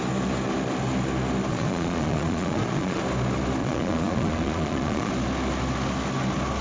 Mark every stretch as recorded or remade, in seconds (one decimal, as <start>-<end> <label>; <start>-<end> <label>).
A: 0.0-1.5 recorded; 1.5-3.0 remade; 3.0-3.6 recorded; 3.6-5.1 remade; 5.1-6.6 recorded